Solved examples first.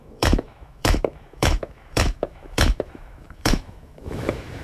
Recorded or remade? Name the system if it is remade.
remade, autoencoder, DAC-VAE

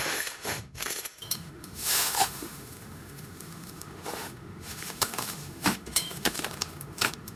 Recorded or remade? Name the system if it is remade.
remade, autoencoder, DAC-VAE